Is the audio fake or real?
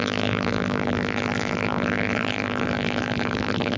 fake